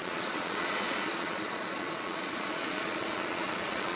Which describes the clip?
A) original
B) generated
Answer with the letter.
B